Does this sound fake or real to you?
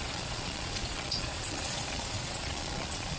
fake